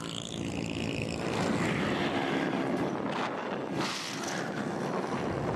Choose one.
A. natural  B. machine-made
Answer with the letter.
A